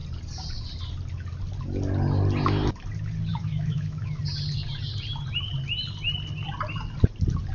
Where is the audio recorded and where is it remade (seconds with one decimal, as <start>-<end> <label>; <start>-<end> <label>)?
0.0-3.3 recorded; 3.3-4.2 remade; 4.2-7.5 recorded